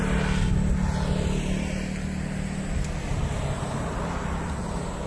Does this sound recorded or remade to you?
recorded